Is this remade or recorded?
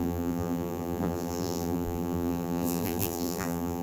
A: remade